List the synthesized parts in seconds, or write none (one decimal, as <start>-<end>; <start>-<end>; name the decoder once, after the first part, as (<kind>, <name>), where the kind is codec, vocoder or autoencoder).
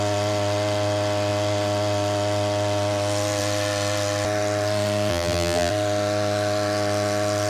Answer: 5.1-5.7 (vocoder, BigVGAN v2)